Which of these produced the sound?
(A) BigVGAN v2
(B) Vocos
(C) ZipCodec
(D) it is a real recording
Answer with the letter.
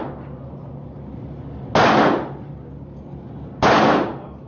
D